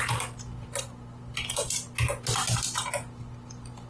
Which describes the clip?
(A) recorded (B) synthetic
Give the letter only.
A